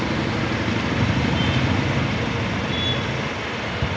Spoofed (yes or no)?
no